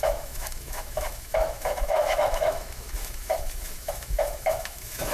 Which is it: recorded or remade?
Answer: remade